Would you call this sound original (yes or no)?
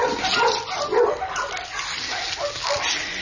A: yes